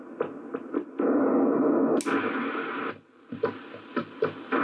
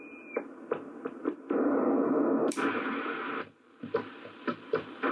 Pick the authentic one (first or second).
first